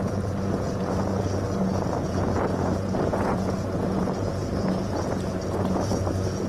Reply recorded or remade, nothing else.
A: remade